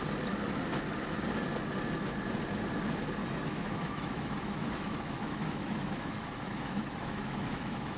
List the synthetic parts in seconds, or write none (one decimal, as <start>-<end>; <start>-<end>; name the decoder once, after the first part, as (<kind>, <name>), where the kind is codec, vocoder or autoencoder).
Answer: 3.2-8.0 (autoencoder, DAC-VAE)